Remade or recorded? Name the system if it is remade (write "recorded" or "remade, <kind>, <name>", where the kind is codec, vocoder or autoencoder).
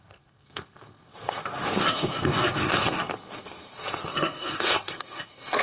remade, codec, SNAC